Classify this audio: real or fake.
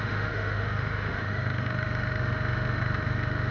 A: fake